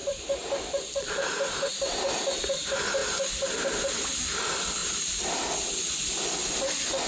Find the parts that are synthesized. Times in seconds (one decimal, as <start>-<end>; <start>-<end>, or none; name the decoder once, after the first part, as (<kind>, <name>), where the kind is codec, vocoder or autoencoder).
0.0-1.7 (vocoder, BigVGAN v2); 3.0-3.7; 4.8-5.5